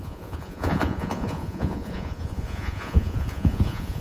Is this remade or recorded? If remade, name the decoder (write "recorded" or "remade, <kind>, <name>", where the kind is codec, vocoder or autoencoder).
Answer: remade, vocoder, Vocos